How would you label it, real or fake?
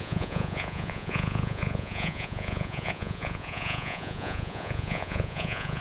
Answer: fake